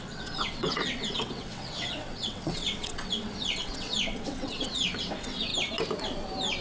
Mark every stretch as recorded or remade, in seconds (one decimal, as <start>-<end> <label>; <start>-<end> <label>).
0.0-5.5 remade; 5.5-6.6 recorded